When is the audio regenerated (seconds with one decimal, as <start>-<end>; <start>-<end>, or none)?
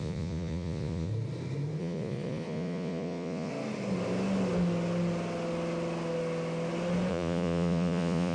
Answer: 0.0-1.1; 1.8-3.5; 7.1-8.3